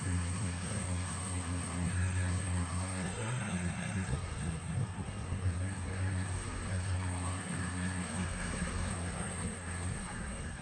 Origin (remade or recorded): remade